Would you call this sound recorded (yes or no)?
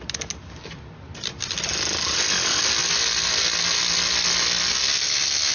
yes